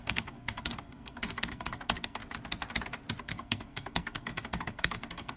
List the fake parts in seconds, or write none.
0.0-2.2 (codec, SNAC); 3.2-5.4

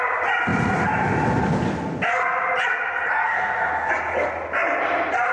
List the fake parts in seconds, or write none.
3.2-3.9 (codec, SNAC)

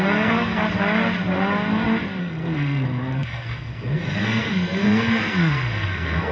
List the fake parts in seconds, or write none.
0.0-0.6 (codec, SNAC); 2.2-6.3